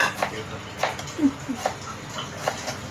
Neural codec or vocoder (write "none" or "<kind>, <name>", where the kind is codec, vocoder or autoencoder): none